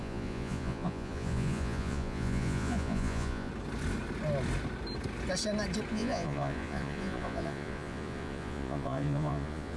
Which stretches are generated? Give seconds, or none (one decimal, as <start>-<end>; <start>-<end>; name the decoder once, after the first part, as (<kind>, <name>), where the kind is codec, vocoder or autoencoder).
0.0-3.5 (vocoder, Vocos); 5.9-9.8

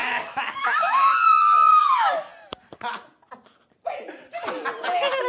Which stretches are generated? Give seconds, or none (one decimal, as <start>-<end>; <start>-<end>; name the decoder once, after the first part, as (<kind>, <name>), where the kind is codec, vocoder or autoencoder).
0.0-2.3 (autoencoder, DAC-VAE)

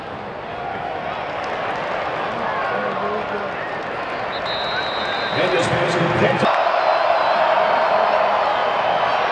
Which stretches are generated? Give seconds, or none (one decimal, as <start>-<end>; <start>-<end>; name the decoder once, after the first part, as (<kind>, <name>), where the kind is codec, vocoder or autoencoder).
none

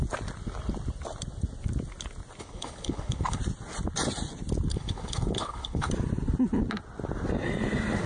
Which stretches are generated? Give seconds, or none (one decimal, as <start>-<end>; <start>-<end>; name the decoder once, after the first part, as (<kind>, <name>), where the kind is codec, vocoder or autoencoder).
2.4-3.4 (codec, HILCodec); 4.7-5.9

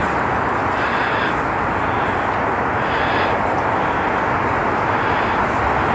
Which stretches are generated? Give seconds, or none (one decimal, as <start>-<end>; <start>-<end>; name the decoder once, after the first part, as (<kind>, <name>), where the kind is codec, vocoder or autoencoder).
0.0-1.0 (vocoder, BigVGAN v2)

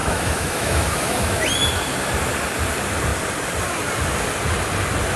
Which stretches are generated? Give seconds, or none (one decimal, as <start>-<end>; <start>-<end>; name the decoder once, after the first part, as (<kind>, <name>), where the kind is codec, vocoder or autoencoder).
0.0-1.4 (autoencoder, DAC-VAE)

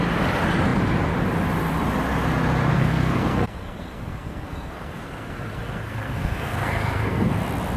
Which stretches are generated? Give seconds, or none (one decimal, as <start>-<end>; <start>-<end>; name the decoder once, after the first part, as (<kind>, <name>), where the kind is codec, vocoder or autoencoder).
2.7-7.3 (codec, SNAC)

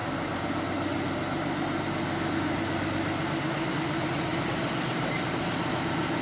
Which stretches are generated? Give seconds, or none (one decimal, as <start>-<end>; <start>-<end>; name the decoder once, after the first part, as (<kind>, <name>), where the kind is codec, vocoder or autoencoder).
none